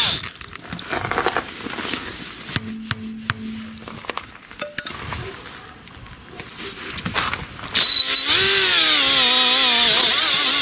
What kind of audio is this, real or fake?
real